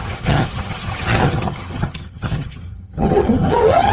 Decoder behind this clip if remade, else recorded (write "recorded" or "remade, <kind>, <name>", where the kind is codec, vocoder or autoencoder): remade, vocoder, HiFi-GAN